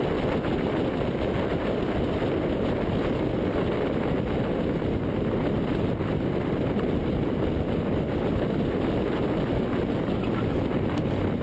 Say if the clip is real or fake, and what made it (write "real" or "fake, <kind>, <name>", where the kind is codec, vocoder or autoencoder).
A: real